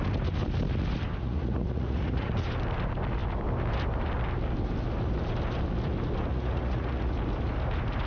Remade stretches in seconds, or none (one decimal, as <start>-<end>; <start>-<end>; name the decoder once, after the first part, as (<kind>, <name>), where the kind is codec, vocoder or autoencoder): 1.2-2.3 (vocoder, Vocos); 6.3-7.1